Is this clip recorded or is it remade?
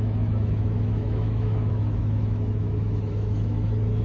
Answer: remade